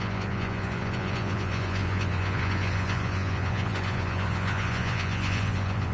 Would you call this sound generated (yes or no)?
yes